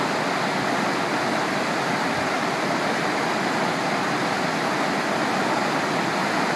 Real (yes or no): yes